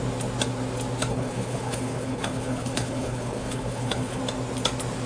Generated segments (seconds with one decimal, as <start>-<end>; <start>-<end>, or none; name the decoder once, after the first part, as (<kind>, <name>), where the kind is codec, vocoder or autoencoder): 1.1-4.2 (codec, HILCodec)